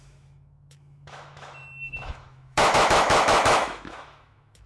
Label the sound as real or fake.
fake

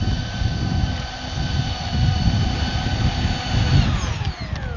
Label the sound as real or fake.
real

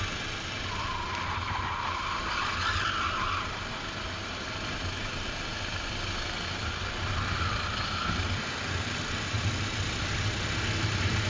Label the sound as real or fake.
real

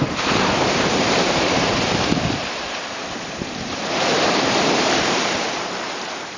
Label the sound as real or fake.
fake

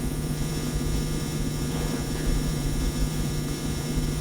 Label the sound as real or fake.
fake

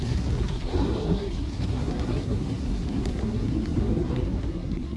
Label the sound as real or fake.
fake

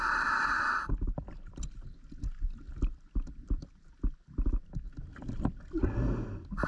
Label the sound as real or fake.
real